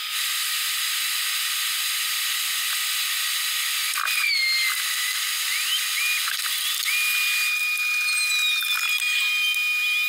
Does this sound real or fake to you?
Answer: real